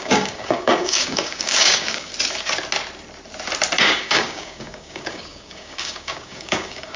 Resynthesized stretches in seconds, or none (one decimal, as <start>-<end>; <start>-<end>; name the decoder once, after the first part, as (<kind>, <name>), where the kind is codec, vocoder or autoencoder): 0.0-2.1 (codec, DAC); 3.8-7.0